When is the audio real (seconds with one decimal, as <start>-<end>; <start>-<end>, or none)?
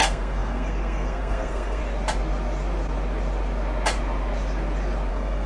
1.8-5.1